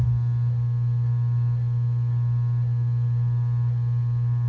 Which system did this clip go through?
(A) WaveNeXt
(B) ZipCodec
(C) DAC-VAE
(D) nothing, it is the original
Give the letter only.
D